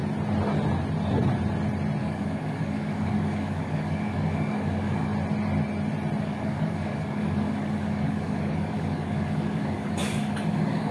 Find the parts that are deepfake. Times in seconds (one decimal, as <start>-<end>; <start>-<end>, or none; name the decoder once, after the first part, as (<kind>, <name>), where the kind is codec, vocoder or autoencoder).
2.0-5.1 (codec, DAC); 6.2-10.9